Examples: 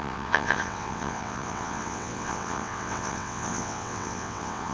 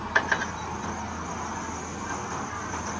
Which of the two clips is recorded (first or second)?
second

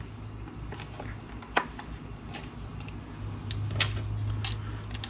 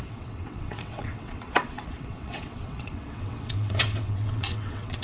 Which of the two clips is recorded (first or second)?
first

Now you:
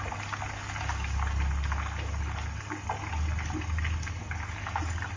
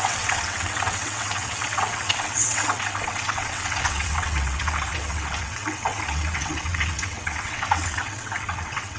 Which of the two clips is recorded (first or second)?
first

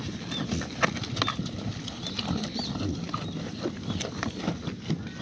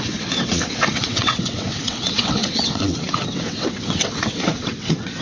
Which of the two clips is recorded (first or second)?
first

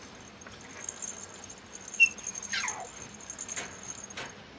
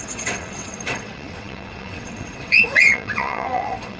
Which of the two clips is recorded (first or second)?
first